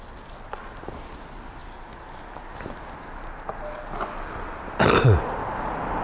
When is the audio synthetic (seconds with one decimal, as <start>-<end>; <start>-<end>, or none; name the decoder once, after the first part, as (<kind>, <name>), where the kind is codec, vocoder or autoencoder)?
none